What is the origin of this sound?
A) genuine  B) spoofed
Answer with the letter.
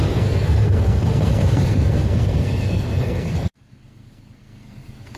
B